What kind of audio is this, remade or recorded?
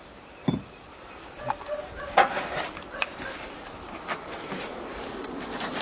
remade